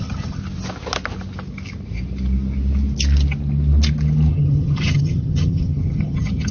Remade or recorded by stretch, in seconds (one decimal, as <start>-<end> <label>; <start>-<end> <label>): 0.0-0.4 remade; 0.4-4.3 recorded; 4.3-6.5 remade